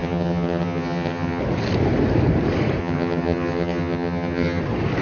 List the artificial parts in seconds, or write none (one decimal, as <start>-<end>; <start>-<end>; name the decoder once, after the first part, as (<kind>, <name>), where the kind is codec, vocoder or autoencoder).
0.0-1.4 (vocoder, HiFi-GAN); 2.8-4.6